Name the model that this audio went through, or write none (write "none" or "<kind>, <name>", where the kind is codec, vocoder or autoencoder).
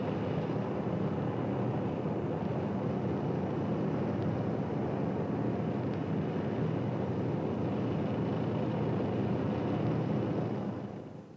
none